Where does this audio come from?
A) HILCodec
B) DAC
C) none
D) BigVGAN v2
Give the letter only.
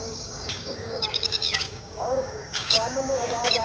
B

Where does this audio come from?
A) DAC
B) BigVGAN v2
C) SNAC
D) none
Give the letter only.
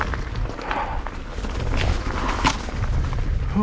D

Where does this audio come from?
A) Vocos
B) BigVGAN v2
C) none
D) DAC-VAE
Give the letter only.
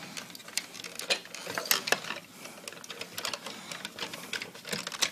C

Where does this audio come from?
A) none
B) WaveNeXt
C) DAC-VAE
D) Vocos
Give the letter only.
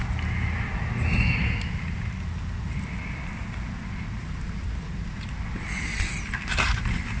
A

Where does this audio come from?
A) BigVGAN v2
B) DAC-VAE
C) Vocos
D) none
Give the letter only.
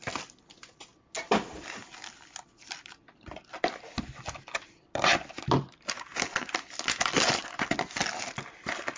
D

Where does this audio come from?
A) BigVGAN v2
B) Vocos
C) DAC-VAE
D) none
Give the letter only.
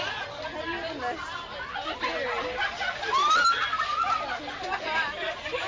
D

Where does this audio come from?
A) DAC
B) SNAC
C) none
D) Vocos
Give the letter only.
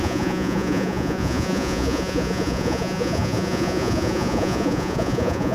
D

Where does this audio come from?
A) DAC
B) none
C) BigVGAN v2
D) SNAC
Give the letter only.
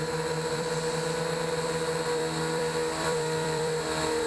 C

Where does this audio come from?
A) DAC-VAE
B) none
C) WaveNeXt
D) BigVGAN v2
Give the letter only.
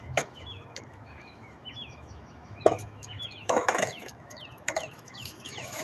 A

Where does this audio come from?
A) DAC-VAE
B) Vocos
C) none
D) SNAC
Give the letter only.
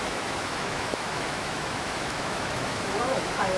A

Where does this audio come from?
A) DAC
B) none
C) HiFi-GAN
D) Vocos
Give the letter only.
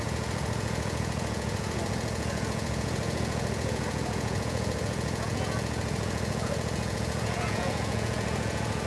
D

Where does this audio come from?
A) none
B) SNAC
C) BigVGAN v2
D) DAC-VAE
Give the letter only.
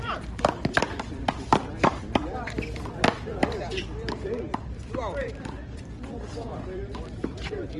C